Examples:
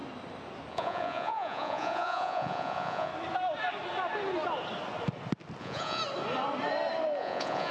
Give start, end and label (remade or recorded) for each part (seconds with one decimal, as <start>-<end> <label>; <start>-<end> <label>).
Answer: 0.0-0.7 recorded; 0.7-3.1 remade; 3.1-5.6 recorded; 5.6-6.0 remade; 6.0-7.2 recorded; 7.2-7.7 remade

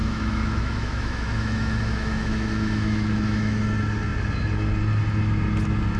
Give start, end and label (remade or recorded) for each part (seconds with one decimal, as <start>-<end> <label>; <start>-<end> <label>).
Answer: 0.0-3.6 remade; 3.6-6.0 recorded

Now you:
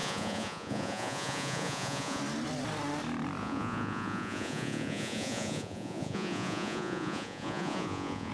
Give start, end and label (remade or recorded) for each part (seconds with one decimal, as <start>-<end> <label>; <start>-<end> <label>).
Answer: 0.0-2.2 remade; 2.2-3.4 recorded; 3.4-8.3 remade

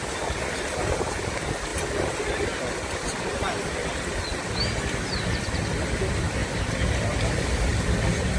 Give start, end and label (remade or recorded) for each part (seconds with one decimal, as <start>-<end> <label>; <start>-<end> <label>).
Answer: 0.0-8.4 recorded

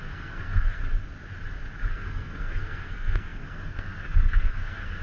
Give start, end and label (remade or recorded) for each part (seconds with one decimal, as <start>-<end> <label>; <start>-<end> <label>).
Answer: 0.0-0.8 remade; 0.8-1.9 recorded; 1.9-5.0 remade

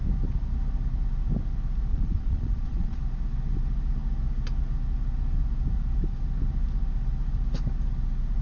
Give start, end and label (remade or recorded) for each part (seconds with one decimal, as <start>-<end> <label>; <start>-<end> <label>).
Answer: 0.0-1.9 recorded; 1.9-3.0 remade; 3.0-8.4 recorded

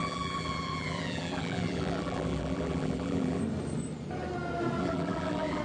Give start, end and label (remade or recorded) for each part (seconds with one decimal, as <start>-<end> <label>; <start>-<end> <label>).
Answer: 0.0-3.4 remade; 3.4-4.8 recorded; 4.8-5.6 remade

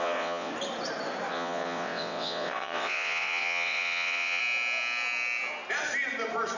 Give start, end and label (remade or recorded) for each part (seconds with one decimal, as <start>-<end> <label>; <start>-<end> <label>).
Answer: 0.0-0.5 remade; 0.5-1.3 recorded; 1.3-4.4 remade; 4.4-6.6 recorded